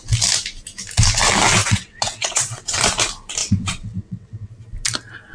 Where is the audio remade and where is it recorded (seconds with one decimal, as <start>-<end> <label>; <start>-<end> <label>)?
0.0-1.6 recorded; 1.6-2.8 remade; 2.8-3.4 recorded; 3.4-4.5 remade; 4.5-5.3 recorded